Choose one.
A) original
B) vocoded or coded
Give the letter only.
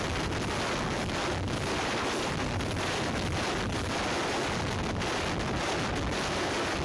A